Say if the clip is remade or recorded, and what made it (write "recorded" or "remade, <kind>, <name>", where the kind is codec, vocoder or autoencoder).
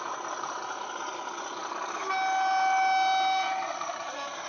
recorded